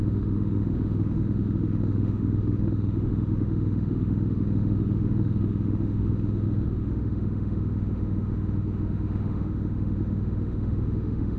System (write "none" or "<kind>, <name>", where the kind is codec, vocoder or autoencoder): autoencoder, DAC-VAE